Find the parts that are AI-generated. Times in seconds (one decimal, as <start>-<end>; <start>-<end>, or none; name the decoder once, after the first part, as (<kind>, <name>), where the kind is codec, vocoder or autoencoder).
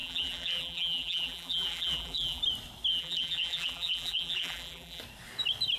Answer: 0.0-2.4 (vocoder, BigVGAN v2); 2.9-5.0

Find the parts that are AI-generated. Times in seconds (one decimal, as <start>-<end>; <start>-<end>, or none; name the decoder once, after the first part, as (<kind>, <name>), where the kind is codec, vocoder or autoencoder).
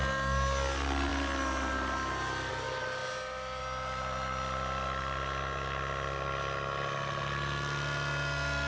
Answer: none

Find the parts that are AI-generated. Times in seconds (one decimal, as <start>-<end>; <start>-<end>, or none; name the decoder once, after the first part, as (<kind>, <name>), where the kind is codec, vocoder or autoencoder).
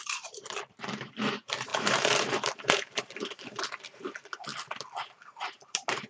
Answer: 0.0-4.5 (vocoder, BigVGAN v2); 5.3-6.1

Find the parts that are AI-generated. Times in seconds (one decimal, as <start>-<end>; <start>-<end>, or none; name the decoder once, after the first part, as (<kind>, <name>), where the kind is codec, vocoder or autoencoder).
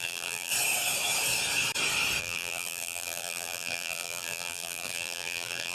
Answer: 0.0-0.5 (vocoder, BigVGAN v2); 2.2-5.7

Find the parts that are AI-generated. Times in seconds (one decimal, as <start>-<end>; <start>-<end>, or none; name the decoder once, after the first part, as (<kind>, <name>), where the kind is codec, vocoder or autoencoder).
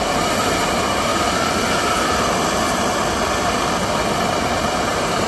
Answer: 0.0-1.1 (vocoder, BigVGAN v2); 4.3-5.3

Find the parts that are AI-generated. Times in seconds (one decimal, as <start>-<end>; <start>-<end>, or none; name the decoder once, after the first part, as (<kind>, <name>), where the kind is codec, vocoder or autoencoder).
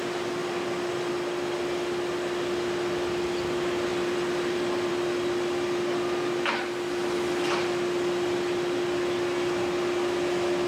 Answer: 0.4-1.1 (vocoder, BigVGAN v2); 3.9-4.9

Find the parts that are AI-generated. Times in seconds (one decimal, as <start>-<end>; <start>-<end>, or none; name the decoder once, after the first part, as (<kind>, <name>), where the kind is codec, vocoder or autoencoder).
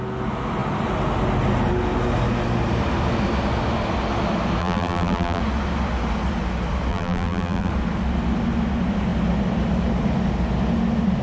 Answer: 4.6-5.4 (vocoder, BigVGAN v2); 6.9-7.7